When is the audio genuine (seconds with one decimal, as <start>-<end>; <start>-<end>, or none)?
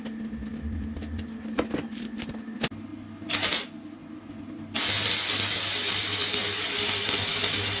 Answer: 0.0-7.8